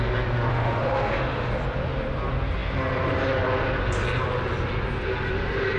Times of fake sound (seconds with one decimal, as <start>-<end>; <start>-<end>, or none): 0.5-1.5